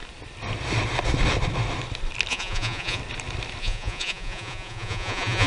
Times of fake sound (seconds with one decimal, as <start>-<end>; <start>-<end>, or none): 2.3-3.0; 3.6-5.5

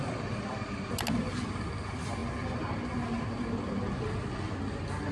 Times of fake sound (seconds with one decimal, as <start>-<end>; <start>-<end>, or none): none

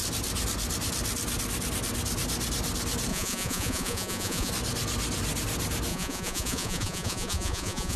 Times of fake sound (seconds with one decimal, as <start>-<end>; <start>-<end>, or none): 3.1-4.5; 5.9-8.0

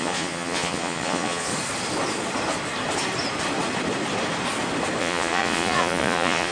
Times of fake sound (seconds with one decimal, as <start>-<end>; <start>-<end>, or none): 0.0-1.5; 5.0-6.5

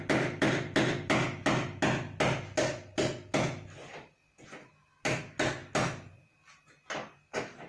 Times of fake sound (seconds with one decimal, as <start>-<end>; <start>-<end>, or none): none

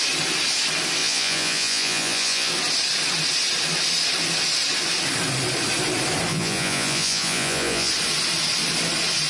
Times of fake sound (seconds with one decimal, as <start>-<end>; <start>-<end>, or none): 1.0-2.5; 6.3-7.9

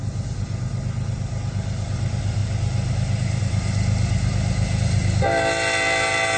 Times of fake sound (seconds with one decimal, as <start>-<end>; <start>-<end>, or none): none

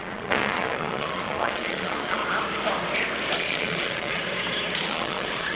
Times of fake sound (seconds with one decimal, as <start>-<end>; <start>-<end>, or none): 0.0-2.2; 3.4-4.2; 4.8-5.6